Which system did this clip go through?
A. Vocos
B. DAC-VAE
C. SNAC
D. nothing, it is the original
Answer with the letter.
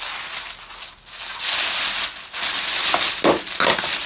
D